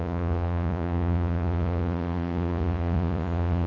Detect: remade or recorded remade